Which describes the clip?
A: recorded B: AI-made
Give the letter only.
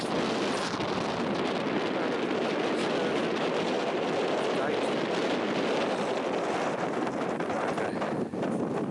A